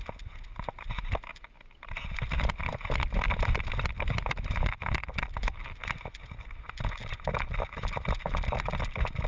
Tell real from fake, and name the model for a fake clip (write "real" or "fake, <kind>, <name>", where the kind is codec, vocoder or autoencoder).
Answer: real